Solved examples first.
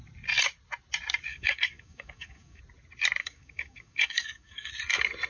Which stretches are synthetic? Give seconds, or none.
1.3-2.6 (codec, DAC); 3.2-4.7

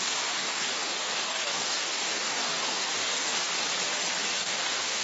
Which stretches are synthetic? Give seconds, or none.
0.0-3.5 (codec, DAC); 4.2-5.0

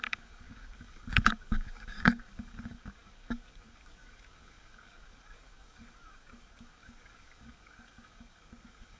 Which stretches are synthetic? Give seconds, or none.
0.0-9.0 (codec, DAC)

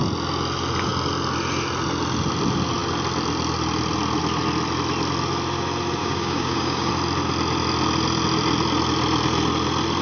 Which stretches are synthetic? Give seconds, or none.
6.0-6.9 (codec, DAC)

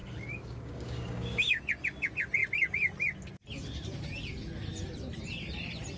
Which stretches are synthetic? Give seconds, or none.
0.0-1.6 (codec, DAC)

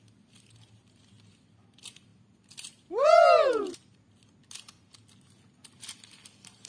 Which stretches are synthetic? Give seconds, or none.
none

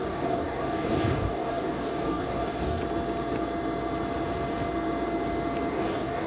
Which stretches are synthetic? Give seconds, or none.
0.0-2.8 (codec, DAC); 5.7-6.3